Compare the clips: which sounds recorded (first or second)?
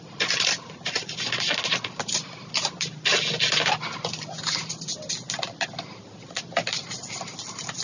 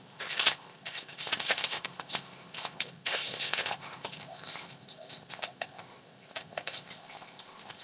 first